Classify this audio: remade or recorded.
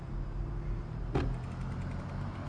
recorded